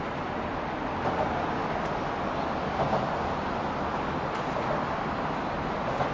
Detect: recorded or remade recorded